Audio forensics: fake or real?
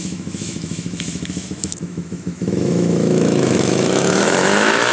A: fake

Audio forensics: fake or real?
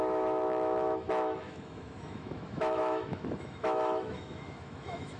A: fake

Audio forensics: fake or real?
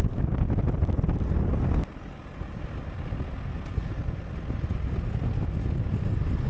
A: real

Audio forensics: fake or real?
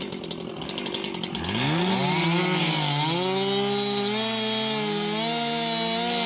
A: real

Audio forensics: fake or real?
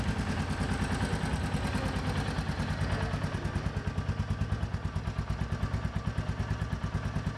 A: real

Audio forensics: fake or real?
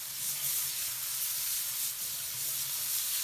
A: real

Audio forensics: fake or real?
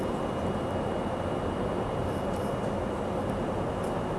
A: real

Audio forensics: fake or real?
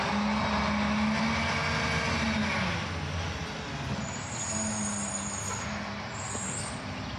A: real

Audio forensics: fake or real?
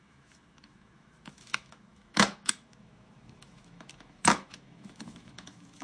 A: fake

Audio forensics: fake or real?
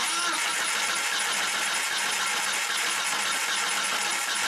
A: real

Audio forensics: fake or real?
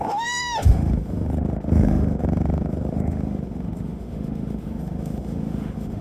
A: fake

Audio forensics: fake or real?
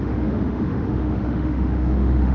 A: fake